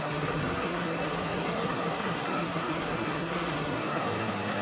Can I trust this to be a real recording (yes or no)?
no